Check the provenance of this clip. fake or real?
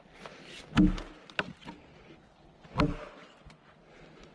real